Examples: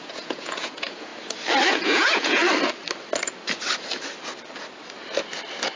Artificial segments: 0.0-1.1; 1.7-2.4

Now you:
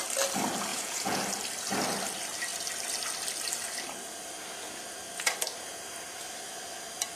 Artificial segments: 0.7-1.2

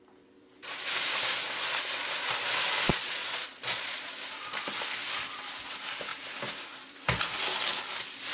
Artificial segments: 2.9-4.1

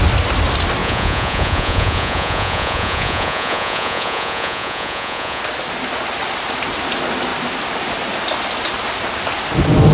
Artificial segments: 0.8-5.4

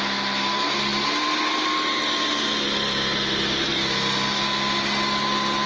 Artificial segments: none